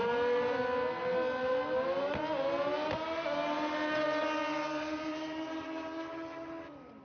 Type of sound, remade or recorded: recorded